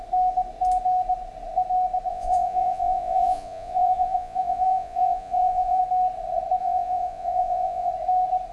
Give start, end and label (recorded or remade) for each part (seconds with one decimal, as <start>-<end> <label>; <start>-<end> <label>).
0.0-2.1 recorded; 2.1-5.8 remade; 5.8-6.6 recorded; 6.6-7.9 remade; 7.9-8.5 recorded